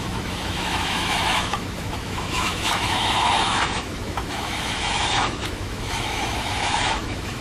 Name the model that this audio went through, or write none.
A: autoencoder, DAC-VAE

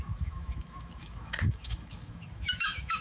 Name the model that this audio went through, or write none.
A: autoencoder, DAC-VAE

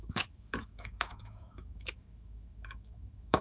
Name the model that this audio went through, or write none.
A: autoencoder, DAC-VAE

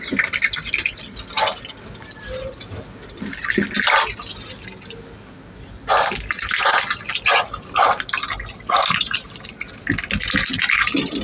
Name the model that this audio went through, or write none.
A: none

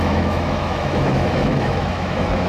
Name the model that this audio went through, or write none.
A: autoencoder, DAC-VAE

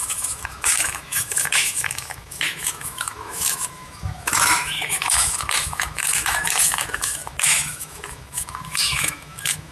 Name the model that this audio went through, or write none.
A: autoencoder, DAC-VAE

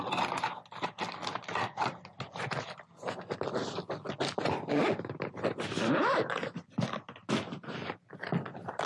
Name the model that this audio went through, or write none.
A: none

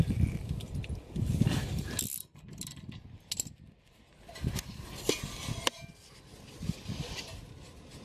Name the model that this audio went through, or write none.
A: none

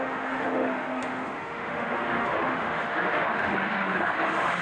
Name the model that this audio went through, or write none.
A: autoencoder, DAC-VAE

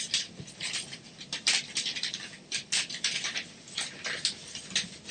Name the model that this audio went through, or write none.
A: none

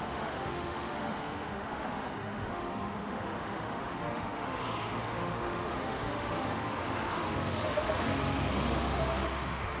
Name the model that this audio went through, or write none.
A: autoencoder, DAC-VAE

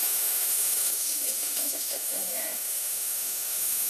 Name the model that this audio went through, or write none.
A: autoencoder, DAC-VAE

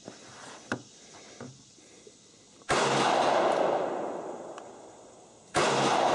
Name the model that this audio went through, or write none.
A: none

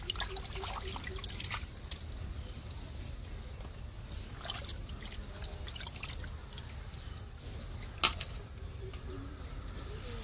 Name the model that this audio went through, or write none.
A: none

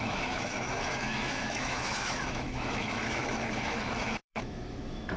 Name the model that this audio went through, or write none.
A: autoencoder, DAC-VAE